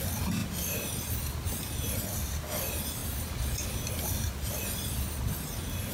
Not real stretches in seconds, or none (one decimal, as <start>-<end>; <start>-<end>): none